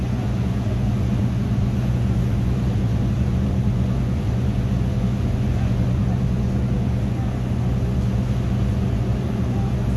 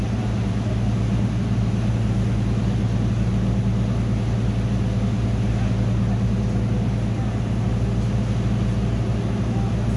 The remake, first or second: first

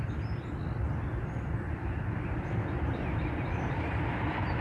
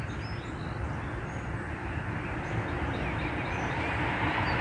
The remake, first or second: first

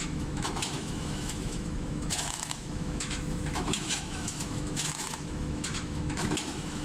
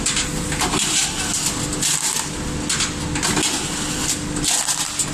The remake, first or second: first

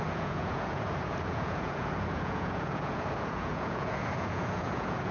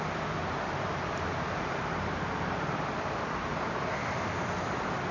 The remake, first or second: first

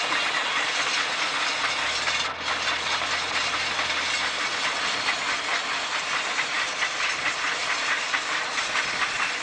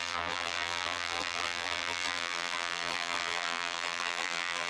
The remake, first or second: second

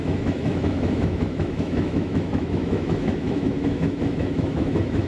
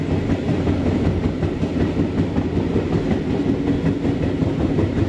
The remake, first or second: first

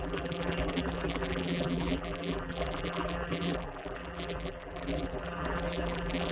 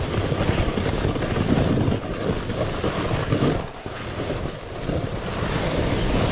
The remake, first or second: first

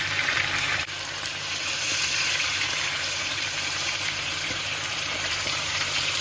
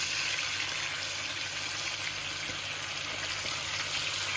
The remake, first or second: first